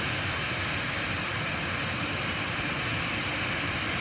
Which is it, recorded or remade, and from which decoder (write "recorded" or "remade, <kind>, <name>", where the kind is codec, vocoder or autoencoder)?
remade, vocoder, BigVGAN v2